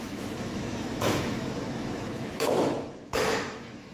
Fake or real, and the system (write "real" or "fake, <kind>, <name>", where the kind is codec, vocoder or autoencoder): fake, autoencoder, DAC-VAE